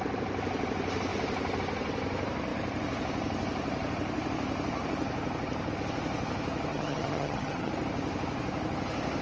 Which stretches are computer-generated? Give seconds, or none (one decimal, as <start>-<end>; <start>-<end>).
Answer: 6.7-7.7